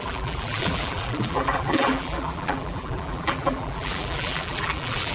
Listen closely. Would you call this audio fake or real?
fake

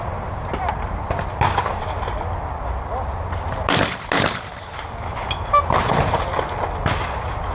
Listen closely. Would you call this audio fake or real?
real